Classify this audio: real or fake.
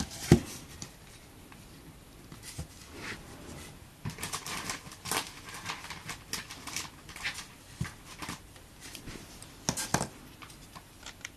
fake